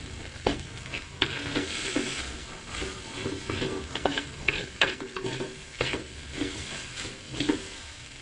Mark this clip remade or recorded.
remade